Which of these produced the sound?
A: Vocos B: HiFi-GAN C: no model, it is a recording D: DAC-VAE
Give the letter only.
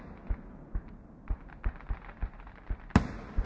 C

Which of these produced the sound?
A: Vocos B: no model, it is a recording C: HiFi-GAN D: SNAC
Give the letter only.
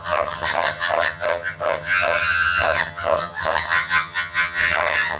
C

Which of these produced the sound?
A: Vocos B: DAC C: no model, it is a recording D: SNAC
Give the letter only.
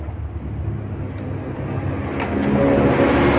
C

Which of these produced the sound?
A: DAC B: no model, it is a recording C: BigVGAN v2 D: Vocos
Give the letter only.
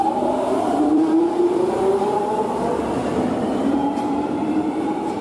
C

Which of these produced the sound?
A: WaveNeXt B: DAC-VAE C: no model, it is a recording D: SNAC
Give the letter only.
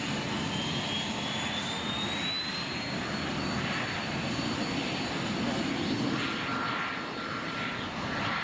C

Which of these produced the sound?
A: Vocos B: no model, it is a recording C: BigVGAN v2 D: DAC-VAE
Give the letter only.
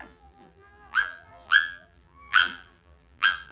C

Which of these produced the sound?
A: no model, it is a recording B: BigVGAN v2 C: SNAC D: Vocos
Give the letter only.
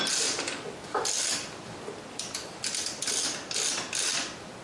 A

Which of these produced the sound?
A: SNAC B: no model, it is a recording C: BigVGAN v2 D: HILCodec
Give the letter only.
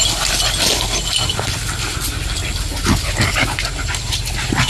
B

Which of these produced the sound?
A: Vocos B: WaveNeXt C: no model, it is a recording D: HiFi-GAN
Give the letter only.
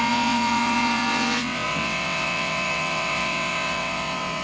B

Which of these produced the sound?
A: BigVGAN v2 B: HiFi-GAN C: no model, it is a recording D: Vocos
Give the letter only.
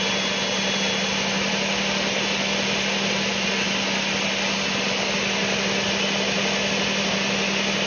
C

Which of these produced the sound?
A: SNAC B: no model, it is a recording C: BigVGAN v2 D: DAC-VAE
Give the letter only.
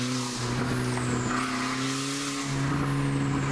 B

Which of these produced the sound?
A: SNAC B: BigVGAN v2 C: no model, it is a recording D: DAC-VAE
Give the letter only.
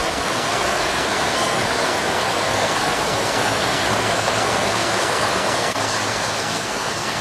A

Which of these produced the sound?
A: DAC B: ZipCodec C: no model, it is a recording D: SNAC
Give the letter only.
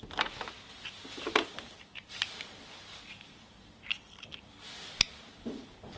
C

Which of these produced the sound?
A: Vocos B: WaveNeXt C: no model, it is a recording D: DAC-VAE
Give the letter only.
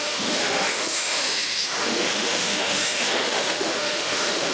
D